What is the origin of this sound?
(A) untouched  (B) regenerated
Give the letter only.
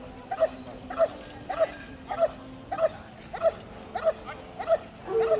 A